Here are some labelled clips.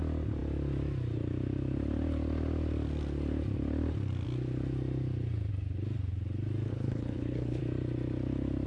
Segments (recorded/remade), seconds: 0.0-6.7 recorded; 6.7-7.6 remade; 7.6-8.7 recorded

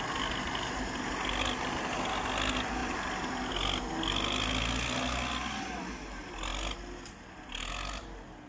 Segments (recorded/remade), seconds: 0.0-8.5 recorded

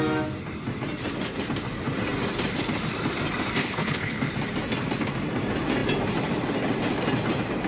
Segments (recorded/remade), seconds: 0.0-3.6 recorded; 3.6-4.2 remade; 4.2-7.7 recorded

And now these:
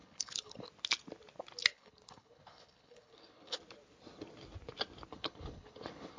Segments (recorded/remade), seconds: 0.0-0.7 remade; 0.7-1.7 recorded; 1.7-3.6 remade; 3.6-5.1 recorded; 5.1-6.2 remade

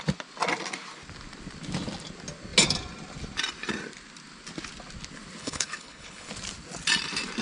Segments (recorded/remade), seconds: 0.0-5.4 recorded; 5.4-6.3 remade; 6.3-7.4 recorded

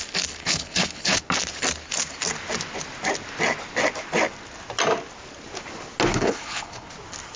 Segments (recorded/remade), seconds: 0.0-0.4 recorded; 0.4-1.2 remade; 1.2-6.1 recorded; 6.1-6.9 remade; 6.9-7.4 recorded

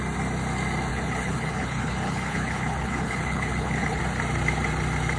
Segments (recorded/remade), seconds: 0.0-0.9 recorded; 0.9-4.0 remade; 4.0-5.2 recorded

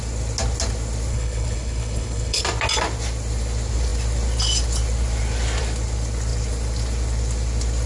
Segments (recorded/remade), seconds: 0.0-1.1 recorded; 1.1-2.4 remade; 2.4-7.9 recorded